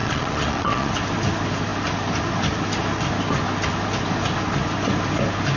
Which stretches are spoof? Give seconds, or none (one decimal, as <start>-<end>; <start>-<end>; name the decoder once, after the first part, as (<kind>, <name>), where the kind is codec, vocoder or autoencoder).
0.0-0.9 (vocoder, Vocos)